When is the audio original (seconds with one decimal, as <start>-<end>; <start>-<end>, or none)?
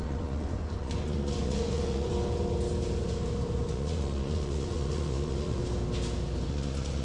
2.1-3.7; 5.6-6.5